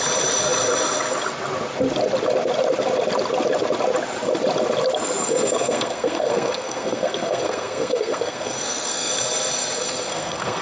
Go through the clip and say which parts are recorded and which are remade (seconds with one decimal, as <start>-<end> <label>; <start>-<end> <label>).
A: 0.0-5.2 recorded; 5.2-9.1 remade; 9.1-9.8 recorded; 9.8-10.6 remade